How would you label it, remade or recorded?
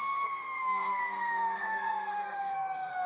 remade